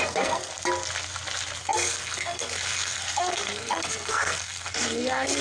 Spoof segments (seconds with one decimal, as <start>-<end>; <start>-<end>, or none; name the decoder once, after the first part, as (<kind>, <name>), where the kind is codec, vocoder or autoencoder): 0.0-0.5 (codec, SNAC); 1.6-5.4